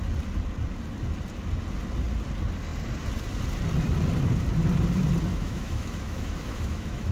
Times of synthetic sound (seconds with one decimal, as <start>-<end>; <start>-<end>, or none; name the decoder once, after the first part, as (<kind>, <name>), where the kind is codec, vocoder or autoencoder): 5.3-7.1 (autoencoder, DAC-VAE)